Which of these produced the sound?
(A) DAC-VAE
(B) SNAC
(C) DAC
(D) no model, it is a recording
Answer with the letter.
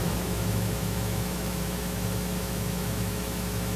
A